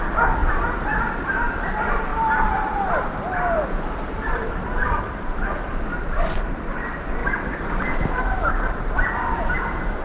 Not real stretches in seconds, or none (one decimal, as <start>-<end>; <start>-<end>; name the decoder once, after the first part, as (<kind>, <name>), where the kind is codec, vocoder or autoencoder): 2.1-6.4 (vocoder, BigVGAN v2)